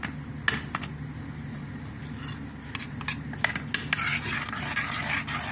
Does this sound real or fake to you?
real